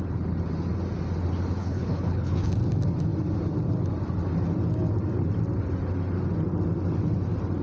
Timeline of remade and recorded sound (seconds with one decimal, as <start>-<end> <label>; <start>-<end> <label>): 0.0-1.6 recorded; 1.6-2.5 remade; 2.5-7.6 recorded